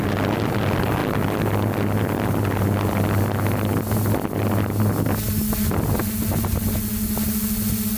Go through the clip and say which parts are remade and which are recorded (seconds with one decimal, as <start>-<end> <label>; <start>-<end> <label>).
0.0-8.0 recorded